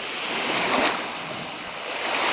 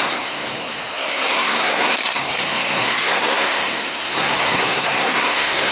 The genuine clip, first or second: first